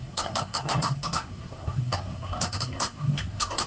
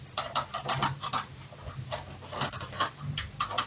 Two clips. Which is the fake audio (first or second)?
first